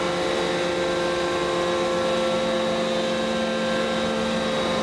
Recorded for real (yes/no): yes